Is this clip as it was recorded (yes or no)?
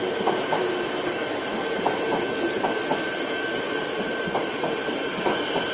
yes